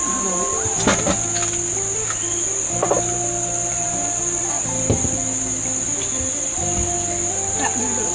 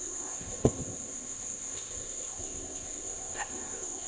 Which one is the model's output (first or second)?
second